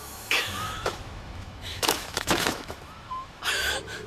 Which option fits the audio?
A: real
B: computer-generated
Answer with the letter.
B